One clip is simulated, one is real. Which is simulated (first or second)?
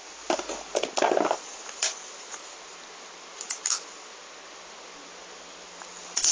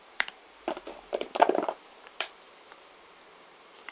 second